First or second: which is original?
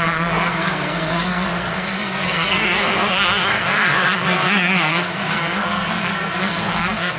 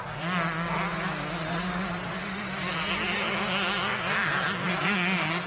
second